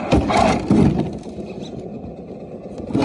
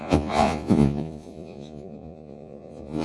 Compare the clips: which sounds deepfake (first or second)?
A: second